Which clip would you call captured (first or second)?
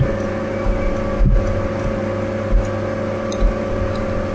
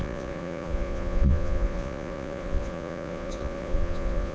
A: first